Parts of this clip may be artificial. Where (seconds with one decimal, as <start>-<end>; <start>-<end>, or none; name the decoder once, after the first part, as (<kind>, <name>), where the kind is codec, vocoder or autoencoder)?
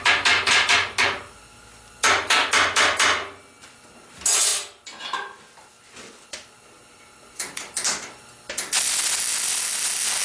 none